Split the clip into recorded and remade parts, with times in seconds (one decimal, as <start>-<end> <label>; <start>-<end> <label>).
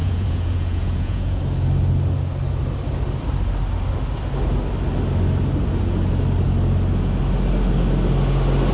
0.0-1.4 remade; 1.4-8.7 recorded